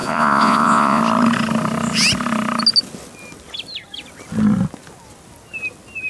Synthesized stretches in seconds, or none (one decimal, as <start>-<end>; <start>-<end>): 0.0-1.0